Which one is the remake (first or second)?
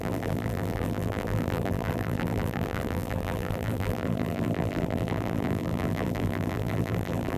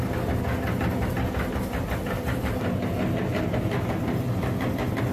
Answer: first